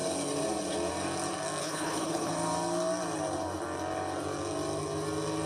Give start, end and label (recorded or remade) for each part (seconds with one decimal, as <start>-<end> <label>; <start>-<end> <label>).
0.0-1.6 recorded; 1.6-2.3 remade; 2.3-5.5 recorded